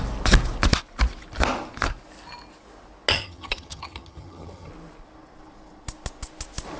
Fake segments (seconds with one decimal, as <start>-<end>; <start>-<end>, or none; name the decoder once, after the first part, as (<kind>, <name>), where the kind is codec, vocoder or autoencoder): 3.1-4.7 (vocoder, HiFi-GAN)